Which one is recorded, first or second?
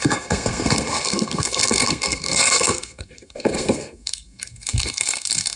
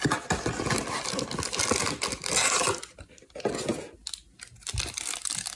second